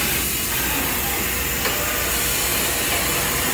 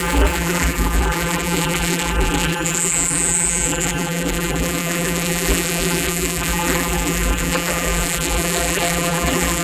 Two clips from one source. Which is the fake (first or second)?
second